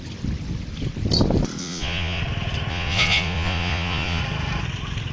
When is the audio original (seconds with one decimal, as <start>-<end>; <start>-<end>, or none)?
0.0-1.6; 2.2-2.7; 4.2-5.1